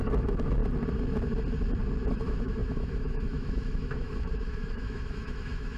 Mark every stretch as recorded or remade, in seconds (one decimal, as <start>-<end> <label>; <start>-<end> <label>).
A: 0.0-0.6 remade; 0.6-2.1 recorded; 2.1-5.8 remade